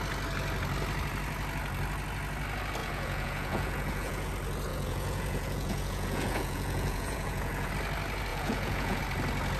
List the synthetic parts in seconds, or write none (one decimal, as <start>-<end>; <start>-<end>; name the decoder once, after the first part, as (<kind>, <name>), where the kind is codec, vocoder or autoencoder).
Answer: 2.8-4.3 (vocoder, Vocos); 4.7-7.7; 8.3-9.0